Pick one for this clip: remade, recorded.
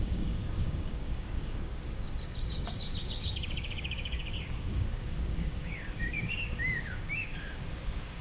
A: remade